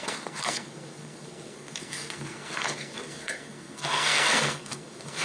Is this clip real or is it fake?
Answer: fake